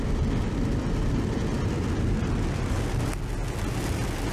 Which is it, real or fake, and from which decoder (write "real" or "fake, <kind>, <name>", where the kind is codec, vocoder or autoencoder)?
real